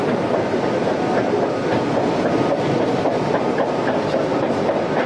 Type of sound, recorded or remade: recorded